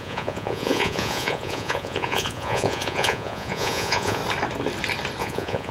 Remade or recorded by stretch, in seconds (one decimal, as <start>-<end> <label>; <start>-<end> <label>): 0.0-4.2 remade; 4.2-5.2 recorded; 5.2-5.7 remade